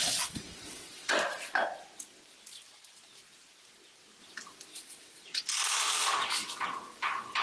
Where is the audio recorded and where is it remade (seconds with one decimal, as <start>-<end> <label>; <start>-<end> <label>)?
0.0-1.1 remade; 1.1-4.7 recorded; 4.7-5.4 remade; 5.4-7.4 recorded